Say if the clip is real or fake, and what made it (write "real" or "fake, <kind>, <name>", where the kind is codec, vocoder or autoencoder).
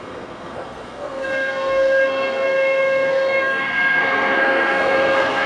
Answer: fake, codec, SNAC